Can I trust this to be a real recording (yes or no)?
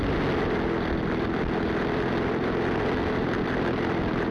yes